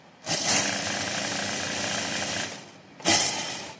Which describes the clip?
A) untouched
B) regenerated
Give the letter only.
A